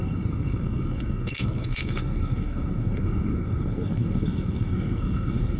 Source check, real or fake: fake